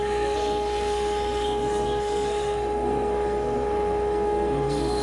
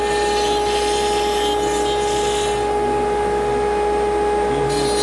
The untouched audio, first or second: second